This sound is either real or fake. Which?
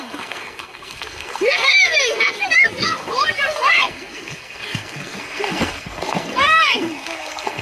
fake